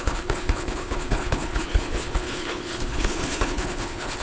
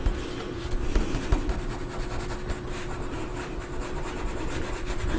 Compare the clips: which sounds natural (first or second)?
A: second